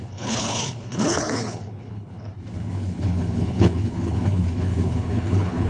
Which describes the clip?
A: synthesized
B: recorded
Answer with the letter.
A